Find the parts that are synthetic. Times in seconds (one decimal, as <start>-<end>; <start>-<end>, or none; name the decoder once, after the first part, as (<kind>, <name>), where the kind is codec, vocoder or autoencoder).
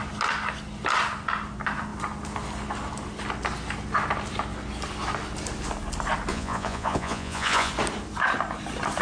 6.3-7.7 (vocoder, Vocos)